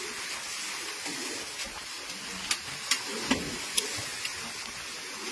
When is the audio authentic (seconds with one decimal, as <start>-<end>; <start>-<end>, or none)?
0.0-5.3